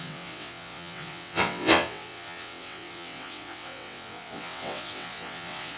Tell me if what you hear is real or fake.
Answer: fake